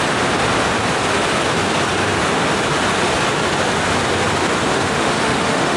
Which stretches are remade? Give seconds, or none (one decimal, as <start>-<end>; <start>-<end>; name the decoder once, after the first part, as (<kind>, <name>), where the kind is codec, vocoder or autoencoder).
4.7-5.8 (autoencoder, DAC-VAE)